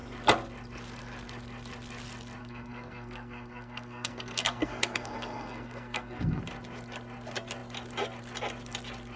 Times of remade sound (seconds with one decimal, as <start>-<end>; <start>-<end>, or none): 2.4-6.4